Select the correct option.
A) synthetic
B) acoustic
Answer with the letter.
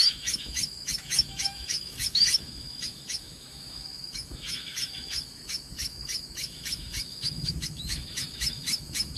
A